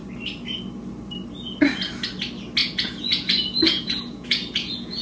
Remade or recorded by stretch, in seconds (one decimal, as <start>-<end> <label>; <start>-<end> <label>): 0.0-2.6 recorded; 2.6-5.0 remade